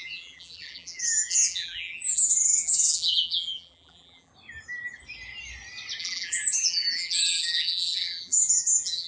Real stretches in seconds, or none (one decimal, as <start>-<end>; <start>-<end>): 4.3-6.0